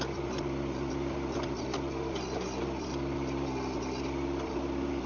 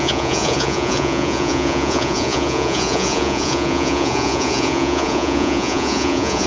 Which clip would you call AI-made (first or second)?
second